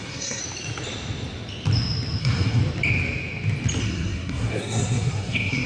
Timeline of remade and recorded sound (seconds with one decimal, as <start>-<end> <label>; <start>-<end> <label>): 0.0-0.4 remade; 0.4-2.2 recorded; 2.2-2.6 remade; 2.6-3.8 recorded; 3.8-5.7 remade